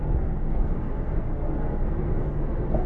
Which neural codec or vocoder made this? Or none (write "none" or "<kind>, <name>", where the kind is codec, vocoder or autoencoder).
codec, SNAC